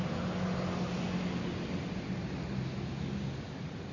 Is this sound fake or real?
real